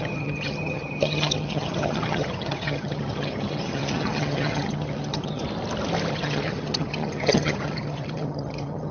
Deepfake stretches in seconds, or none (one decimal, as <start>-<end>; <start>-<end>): 0.0-5.4; 6.1-8.9